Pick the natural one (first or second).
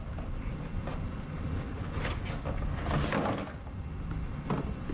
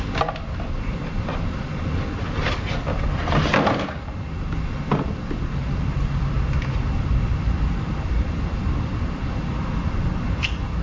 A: first